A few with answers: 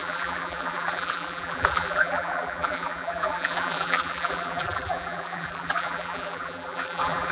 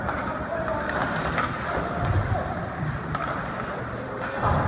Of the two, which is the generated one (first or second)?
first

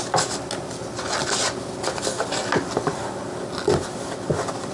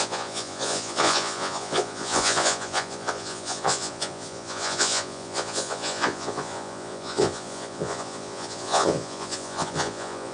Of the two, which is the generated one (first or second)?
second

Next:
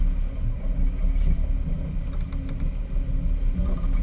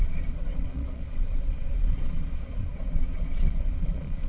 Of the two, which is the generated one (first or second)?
second